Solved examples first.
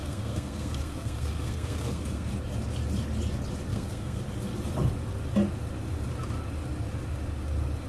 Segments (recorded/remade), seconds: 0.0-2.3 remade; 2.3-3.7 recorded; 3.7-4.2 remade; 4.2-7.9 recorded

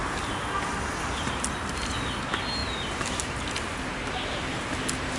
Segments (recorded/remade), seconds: 0.0-5.2 recorded

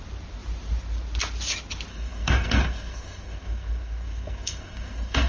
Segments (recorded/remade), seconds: 0.0-1.9 recorded; 1.9-5.3 remade

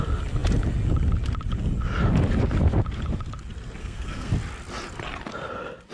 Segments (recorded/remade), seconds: 0.0-3.8 recorded; 3.8-4.3 remade; 4.3-5.9 recorded

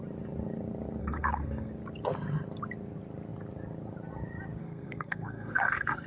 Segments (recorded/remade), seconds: 0.0-1.0 recorded; 1.0-1.7 remade; 1.7-4.6 recorded; 4.6-6.1 remade

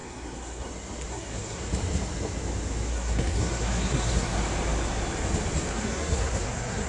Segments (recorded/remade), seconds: 0.0-0.7 remade; 0.7-1.1 recorded; 1.1-1.7 remade; 1.7-2.9 recorded; 2.9-4.4 remade; 4.4-5.7 recorded; 5.7-6.9 remade